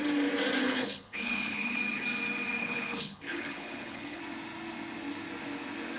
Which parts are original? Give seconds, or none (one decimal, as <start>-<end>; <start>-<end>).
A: 0.0-0.6; 1.8-2.6; 4.2-6.0